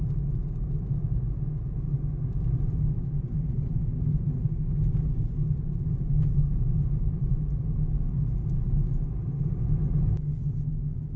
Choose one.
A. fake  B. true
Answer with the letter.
B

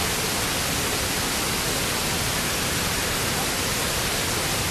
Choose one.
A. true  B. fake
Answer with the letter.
A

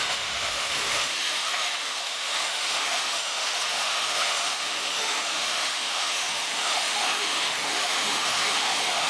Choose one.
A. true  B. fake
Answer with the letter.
B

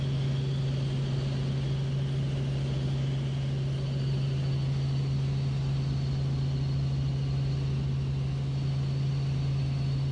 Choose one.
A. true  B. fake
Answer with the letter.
A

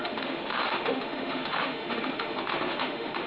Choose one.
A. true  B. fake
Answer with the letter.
B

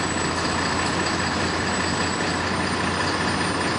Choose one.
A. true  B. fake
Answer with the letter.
A